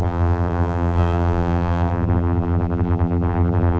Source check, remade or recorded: remade